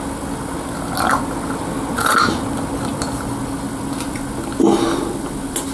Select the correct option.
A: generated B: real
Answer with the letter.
B